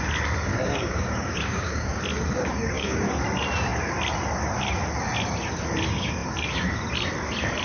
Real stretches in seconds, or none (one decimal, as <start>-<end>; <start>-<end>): 0.0-0.5; 2.0-2.5; 3.1-7.6